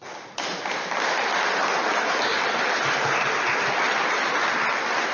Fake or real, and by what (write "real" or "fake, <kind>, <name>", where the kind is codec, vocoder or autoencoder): real